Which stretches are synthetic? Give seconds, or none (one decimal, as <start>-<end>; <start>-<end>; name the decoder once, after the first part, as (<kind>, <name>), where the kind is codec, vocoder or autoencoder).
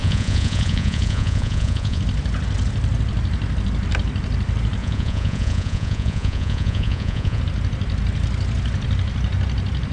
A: 0.0-2.0 (vocoder, Vocos); 4.8-7.4